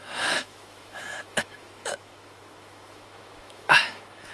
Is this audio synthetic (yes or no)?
yes